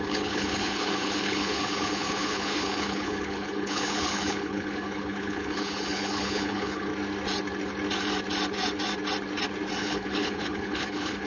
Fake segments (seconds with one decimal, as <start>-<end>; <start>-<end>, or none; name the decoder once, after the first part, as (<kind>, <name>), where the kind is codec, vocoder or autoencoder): 0.0-6.9 (codec, HILCodec); 9.8-11.3